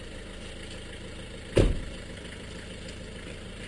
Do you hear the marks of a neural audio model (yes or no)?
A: yes